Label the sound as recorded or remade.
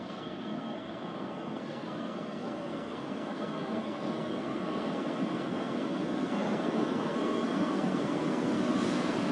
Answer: remade